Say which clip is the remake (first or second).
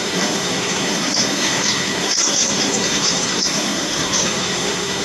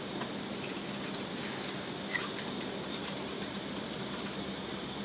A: first